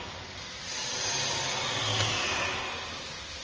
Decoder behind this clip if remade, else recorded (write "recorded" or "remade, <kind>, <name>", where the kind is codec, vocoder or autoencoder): recorded